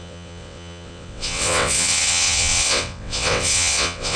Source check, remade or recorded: remade